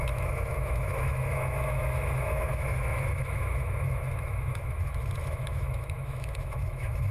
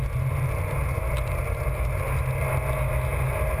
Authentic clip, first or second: second